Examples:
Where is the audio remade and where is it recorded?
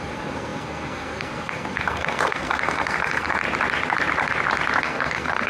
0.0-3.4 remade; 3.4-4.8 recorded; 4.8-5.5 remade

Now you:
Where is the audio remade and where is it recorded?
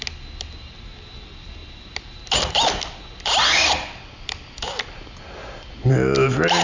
0.0-6.6 recorded